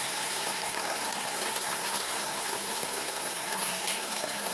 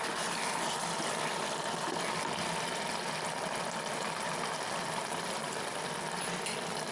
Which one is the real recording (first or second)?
second